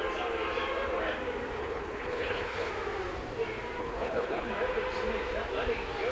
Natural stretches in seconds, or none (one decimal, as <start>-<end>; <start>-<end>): 0.0-1.6; 2.7-3.8; 4.5-6.1